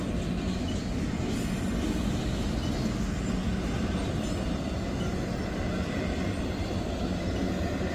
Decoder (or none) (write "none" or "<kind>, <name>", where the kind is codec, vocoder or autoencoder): none